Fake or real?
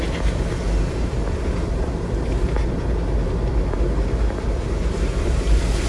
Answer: real